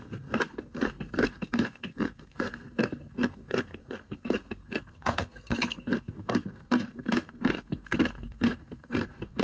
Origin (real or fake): fake